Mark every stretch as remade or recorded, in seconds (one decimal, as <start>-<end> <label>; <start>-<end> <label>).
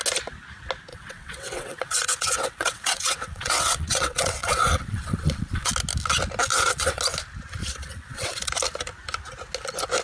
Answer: 0.0-0.9 recorded; 0.9-5.7 remade; 5.7-6.5 recorded; 6.5-7.0 remade; 7.0-7.6 recorded; 7.6-8.5 remade; 8.5-10.0 recorded